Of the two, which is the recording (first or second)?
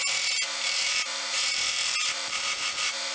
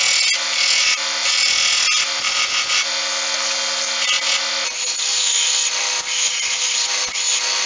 second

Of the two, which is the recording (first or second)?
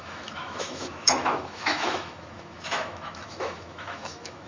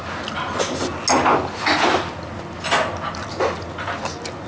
second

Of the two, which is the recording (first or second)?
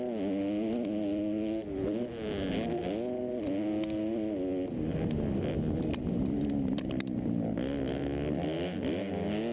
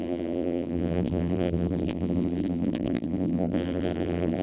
first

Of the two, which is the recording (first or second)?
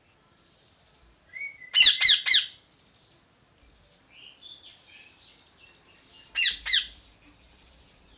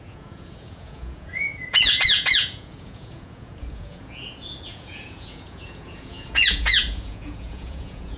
first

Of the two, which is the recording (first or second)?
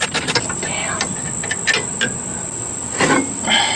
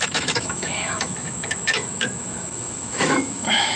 first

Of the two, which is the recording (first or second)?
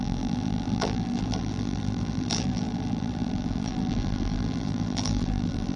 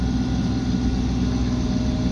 second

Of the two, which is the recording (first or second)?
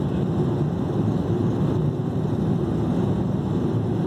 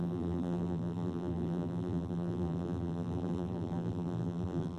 first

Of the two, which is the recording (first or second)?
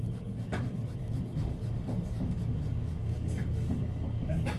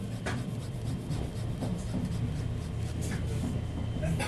second